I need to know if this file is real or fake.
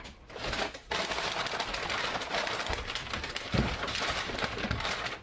real